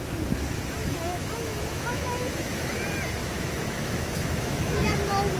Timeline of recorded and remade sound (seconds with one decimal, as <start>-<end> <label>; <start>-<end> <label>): 0.0-0.8 recorded; 0.8-2.8 remade; 2.8-3.2 recorded; 3.2-4.9 remade; 4.9-5.4 recorded